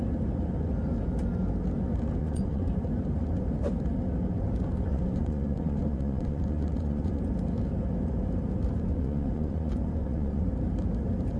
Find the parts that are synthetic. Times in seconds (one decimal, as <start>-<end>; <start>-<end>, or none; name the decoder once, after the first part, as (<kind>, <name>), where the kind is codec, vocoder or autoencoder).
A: 2.2-2.7 (vocoder, Vocos); 4.9-7.2; 8.9-10.5